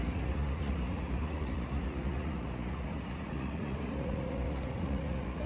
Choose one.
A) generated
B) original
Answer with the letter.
A